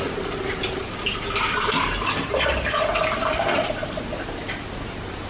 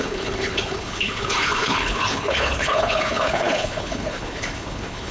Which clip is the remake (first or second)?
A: second